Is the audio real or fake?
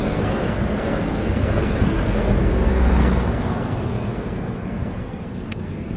fake